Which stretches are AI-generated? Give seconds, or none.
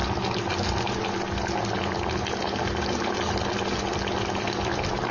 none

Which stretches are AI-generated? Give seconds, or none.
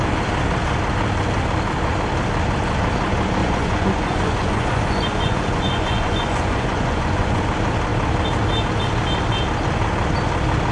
3.4-7.4 (vocoder, Vocos)